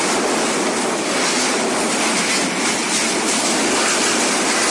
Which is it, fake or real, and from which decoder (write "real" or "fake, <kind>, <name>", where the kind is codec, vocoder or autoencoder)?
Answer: real